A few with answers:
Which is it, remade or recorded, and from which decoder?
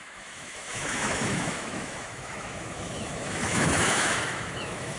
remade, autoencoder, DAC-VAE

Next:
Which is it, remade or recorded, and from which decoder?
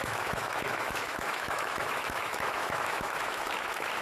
remade, autoencoder, DAC-VAE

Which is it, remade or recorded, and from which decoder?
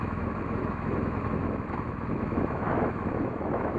remade, autoencoder, DAC-VAE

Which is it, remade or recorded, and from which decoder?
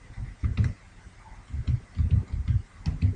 recorded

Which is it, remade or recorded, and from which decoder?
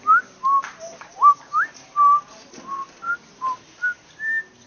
recorded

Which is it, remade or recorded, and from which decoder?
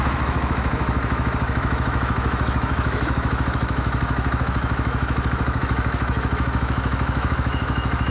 remade, autoencoder, DAC-VAE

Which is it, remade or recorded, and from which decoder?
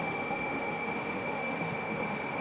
remade, autoencoder, DAC-VAE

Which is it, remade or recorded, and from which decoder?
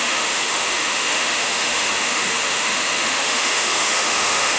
remade, autoencoder, DAC-VAE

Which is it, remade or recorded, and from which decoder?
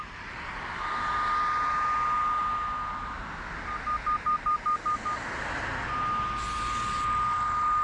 recorded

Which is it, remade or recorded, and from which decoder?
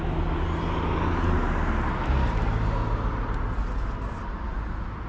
recorded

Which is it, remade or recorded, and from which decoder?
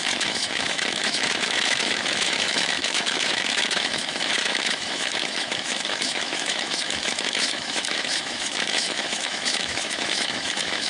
remade, autoencoder, DAC-VAE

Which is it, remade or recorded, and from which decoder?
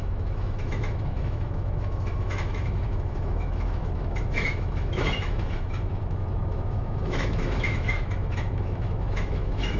remade, autoencoder, DAC-VAE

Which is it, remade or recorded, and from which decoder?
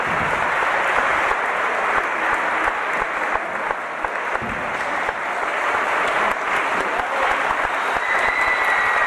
recorded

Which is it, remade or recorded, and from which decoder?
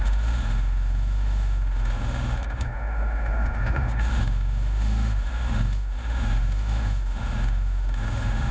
remade, autoencoder, DAC-VAE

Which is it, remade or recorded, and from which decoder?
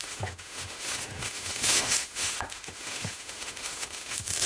remade, autoencoder, DAC-VAE